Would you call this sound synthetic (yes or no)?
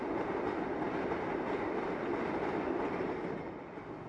no